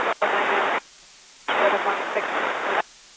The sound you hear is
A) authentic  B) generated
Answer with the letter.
B